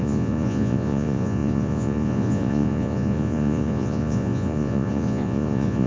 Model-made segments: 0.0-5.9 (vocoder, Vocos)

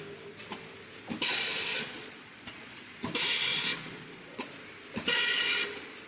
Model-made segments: 1.7-2.8 (vocoder, Vocos); 3.5-4.5